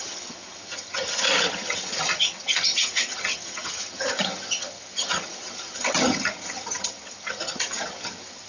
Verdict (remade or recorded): remade